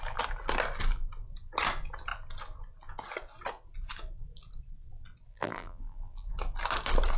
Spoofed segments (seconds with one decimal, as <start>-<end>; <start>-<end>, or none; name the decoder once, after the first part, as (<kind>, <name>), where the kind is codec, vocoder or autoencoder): 5.3-6.3 (vocoder, BigVGAN v2)